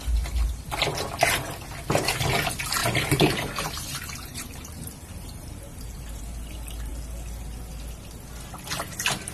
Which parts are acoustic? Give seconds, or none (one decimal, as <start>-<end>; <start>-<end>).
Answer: 0.0-2.8; 3.7-4.3; 6.2-9.3

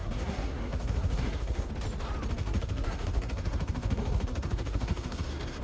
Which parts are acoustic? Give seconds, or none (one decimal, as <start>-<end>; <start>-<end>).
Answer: 1.7-2.4